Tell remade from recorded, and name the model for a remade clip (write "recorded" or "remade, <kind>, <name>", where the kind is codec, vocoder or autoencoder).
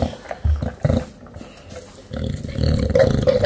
recorded